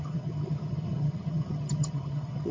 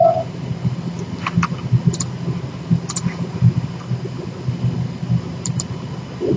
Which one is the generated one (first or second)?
first